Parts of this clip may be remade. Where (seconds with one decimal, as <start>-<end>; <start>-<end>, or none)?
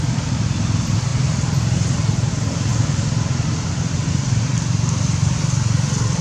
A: 0.0-2.7; 4.1-6.2